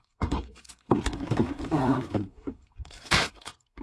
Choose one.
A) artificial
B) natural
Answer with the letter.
A